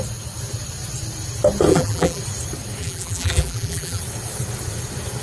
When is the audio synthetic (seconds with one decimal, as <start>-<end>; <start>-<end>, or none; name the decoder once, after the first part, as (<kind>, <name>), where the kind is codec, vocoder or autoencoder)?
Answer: 1.7-2.2 (vocoder, BigVGAN v2); 2.8-4.0